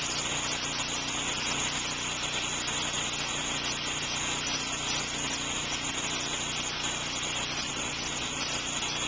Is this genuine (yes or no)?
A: yes